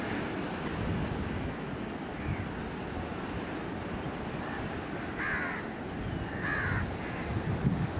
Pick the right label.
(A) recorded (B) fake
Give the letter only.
A